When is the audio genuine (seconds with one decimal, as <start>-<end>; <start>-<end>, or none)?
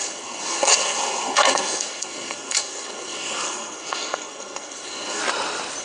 5.2-5.8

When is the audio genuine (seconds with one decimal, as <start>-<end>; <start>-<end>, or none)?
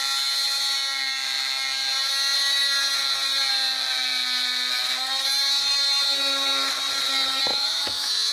0.0-7.5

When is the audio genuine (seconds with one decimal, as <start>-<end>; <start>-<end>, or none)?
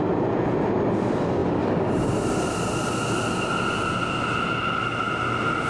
0.0-5.7